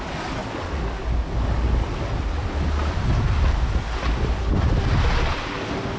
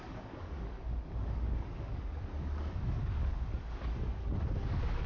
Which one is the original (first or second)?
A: first